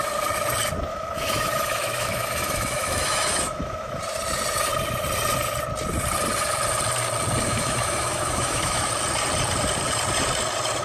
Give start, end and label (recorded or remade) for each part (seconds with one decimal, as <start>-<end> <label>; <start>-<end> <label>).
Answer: 0.0-0.9 recorded; 0.9-4.0 remade; 4.0-7.5 recorded; 7.5-8.9 remade; 8.9-10.8 recorded